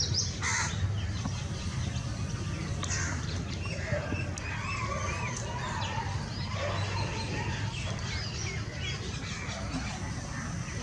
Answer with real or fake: real